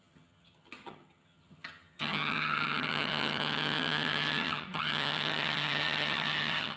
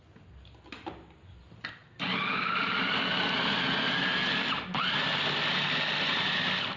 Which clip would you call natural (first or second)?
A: second